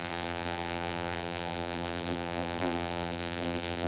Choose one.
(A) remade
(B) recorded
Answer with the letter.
A